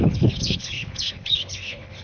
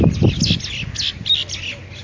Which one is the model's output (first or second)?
first